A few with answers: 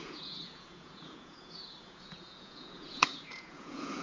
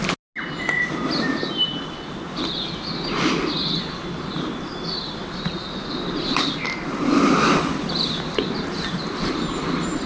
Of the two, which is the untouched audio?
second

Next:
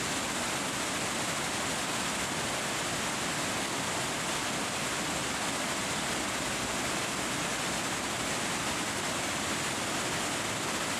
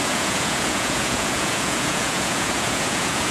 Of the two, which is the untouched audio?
first